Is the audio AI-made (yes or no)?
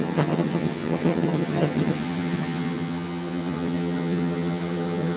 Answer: yes